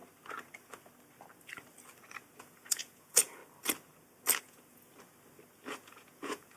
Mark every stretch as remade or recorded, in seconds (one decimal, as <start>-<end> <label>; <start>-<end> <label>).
0.0-2.4 recorded; 2.4-3.4 remade; 3.4-4.4 recorded; 4.4-4.9 remade; 4.9-5.7 recorded; 5.7-6.6 remade